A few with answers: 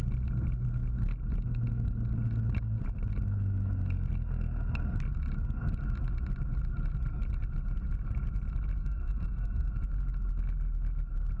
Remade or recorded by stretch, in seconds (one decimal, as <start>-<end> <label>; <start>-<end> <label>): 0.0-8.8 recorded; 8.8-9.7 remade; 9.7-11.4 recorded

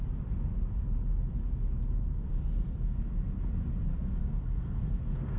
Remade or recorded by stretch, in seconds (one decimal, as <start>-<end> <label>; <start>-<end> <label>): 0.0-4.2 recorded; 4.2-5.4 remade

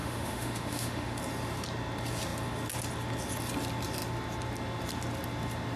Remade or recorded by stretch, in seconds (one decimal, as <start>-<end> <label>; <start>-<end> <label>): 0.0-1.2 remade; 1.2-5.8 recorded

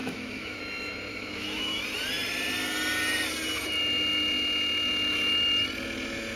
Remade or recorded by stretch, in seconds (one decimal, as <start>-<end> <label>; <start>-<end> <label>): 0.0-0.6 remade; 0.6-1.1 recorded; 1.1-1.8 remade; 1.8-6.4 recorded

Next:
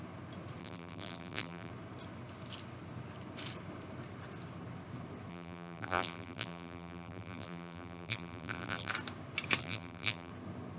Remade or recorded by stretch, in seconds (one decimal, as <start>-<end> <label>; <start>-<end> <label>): 0.0-0.6 recorded; 0.6-1.7 remade; 1.7-5.3 recorded; 5.3-8.9 remade; 8.9-9.6 recorded; 9.6-10.3 remade; 10.3-10.8 recorded